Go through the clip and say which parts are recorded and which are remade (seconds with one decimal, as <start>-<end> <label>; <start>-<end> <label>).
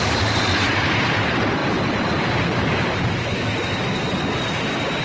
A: 0.0-5.0 recorded